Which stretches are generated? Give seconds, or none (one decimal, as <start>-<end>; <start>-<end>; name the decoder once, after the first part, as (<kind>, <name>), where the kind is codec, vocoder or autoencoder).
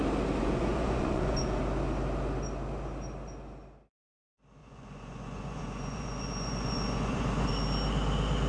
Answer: 0.4-1.6 (vocoder, Vocos); 4.6-7.5